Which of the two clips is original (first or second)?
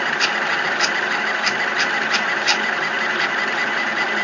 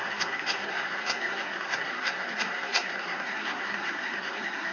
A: first